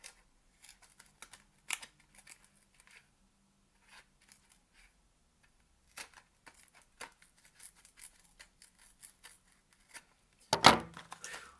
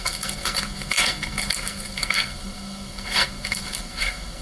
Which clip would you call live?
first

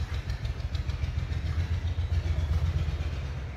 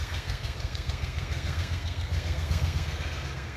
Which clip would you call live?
first